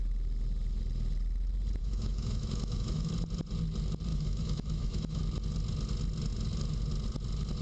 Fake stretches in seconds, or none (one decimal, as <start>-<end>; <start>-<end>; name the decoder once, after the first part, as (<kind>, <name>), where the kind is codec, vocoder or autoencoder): 1.8-3.1 (autoencoder, DAC-VAE); 4.1-5.2